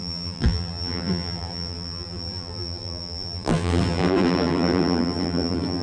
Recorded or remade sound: remade